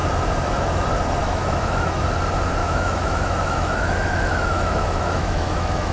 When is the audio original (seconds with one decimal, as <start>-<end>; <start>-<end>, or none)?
0.0-1.2; 2.0-2.6